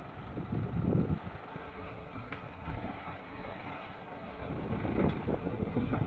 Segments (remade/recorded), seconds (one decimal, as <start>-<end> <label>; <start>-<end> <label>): 0.0-1.5 recorded; 1.5-4.5 remade; 4.5-5.4 recorded; 5.4-6.1 remade